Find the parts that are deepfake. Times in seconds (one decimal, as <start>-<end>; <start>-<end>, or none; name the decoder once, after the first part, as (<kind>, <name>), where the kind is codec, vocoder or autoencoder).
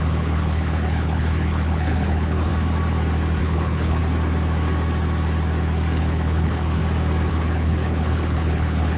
0.0-2.5 (codec, HILCodec); 3.4-4.0; 6.0-6.8; 7.3-9.0